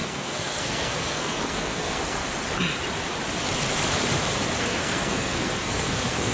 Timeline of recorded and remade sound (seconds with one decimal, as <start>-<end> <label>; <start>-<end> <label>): 0.0-2.2 remade; 2.2-4.6 recorded; 4.6-6.3 remade